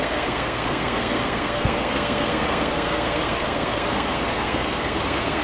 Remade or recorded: remade